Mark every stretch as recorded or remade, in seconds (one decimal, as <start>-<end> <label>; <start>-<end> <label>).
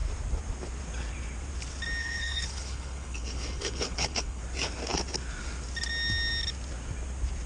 0.0-2.0 recorded; 2.0-4.4 remade; 4.4-7.5 recorded